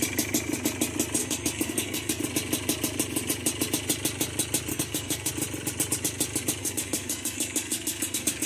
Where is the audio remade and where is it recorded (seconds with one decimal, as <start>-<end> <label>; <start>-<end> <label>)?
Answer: 0.0-1.2 recorded; 1.2-2.2 remade; 2.2-4.7 recorded; 4.7-5.3 remade; 5.3-6.6 recorded; 6.6-8.5 remade